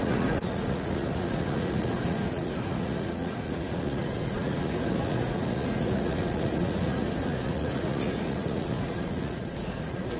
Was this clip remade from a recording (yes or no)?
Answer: yes